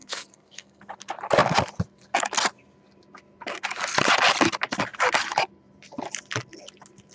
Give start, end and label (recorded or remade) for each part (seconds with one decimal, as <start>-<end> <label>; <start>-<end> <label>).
0.0-0.8 remade; 0.8-7.1 recorded